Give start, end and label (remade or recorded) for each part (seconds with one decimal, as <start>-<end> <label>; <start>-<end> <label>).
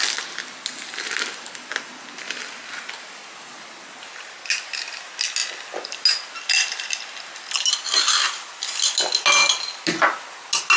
0.0-10.8 recorded